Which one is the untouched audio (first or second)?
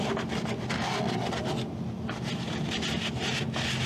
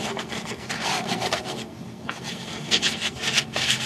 first